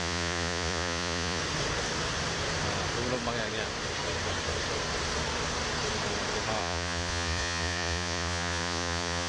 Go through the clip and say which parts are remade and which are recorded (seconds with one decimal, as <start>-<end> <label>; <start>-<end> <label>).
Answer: 0.0-1.4 remade; 1.4-6.6 recorded; 6.6-9.3 remade

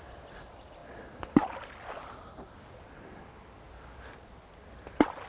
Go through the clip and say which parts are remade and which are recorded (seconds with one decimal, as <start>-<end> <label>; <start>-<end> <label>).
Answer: 0.0-5.3 recorded

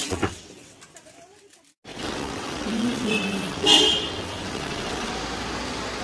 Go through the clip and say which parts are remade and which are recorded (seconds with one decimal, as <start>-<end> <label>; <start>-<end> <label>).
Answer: 0.0-0.8 remade; 0.8-1.9 recorded; 1.9-5.1 remade; 5.1-6.0 recorded

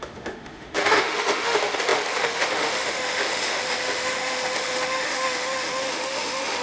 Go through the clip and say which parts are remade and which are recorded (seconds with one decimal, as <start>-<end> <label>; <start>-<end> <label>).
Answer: 0.0-6.6 remade